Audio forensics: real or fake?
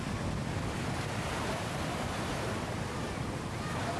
fake